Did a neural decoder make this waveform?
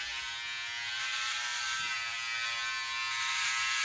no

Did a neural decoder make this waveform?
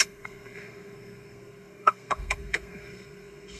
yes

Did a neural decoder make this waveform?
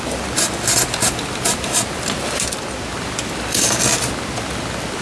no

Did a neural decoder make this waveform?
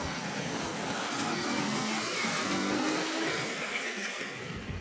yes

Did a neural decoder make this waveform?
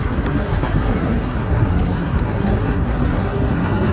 yes